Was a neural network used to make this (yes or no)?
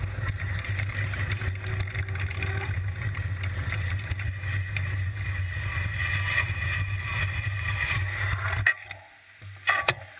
no